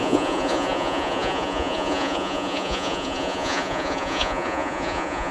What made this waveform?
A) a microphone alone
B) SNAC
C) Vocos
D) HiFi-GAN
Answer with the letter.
C